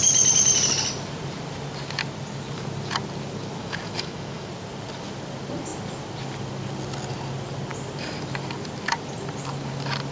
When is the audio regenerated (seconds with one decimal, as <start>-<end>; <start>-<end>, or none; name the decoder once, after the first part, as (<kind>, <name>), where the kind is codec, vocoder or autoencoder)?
3.6-4.5 (autoencoder, DAC-VAE)